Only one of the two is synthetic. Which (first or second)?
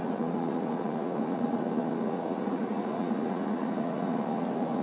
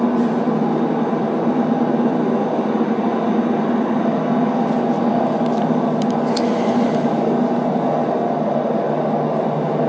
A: first